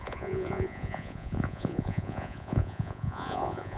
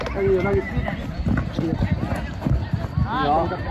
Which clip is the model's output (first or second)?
first